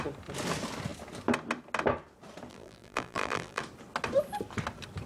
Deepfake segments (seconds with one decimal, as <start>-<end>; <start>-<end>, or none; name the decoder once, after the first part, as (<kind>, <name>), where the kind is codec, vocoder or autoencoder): 2.5-3.6 (vocoder, BigVGAN v2)